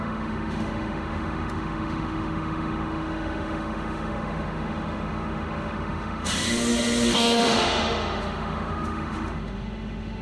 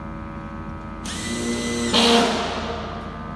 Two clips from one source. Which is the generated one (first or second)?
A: first